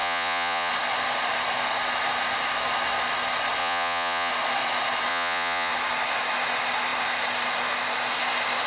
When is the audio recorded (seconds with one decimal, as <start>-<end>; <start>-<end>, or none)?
0.7-3.6; 4.3-5.1; 5.7-8.7